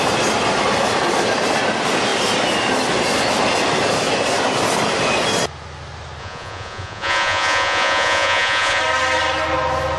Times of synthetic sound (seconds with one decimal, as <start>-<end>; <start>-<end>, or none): 6.2-8.8